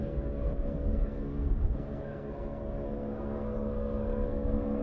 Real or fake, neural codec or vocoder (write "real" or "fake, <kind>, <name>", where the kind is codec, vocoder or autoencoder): fake, codec, SNAC